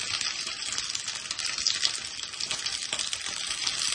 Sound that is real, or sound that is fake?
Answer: real